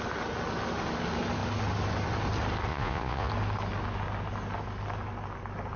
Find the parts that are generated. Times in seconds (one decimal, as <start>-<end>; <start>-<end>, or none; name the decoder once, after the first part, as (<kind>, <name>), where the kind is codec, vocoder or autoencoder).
2.7-3.3 (vocoder, Vocos)